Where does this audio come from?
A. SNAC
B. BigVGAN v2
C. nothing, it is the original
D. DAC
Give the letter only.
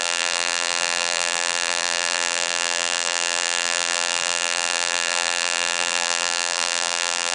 B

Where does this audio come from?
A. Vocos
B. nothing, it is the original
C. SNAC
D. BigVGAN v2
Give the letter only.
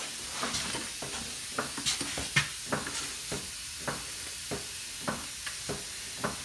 B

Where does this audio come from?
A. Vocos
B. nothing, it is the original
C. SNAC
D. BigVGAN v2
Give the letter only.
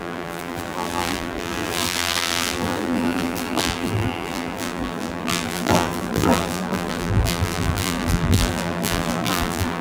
D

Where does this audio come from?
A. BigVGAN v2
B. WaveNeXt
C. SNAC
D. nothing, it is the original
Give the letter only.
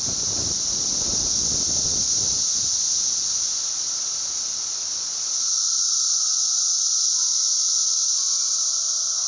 A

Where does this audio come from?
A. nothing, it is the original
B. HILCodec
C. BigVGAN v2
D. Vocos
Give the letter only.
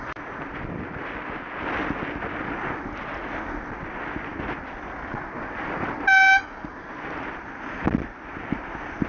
A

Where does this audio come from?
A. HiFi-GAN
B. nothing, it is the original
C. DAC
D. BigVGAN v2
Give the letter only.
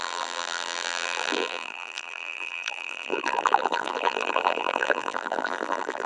D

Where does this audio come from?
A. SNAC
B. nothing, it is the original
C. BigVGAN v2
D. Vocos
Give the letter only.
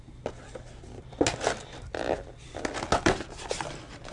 B